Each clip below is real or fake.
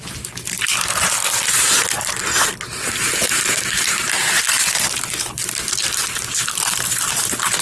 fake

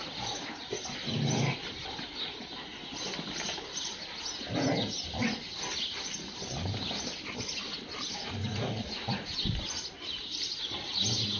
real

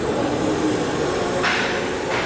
real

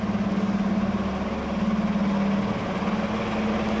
real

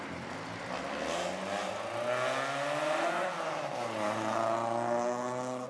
real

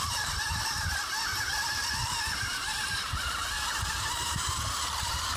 fake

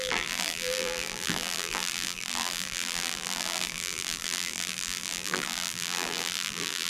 fake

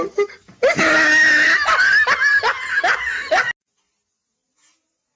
real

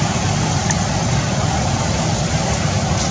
real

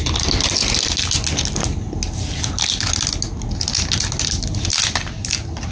real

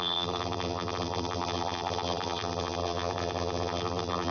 fake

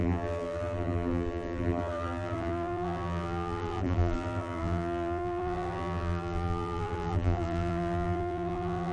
fake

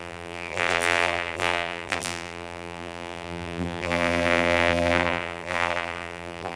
fake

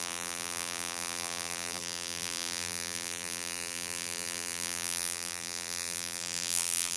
fake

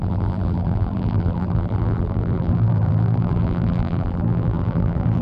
fake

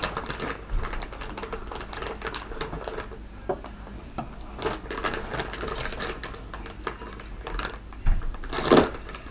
real